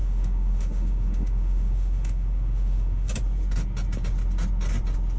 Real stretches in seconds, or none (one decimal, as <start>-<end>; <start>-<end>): 3.1-5.2